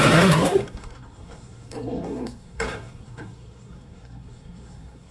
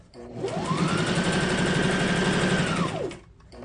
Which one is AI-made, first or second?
first